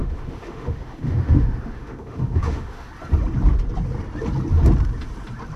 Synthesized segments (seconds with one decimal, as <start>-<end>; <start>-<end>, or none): 0.0-2.9